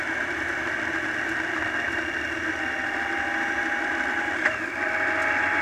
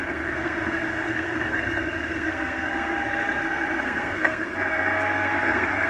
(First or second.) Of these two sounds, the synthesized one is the second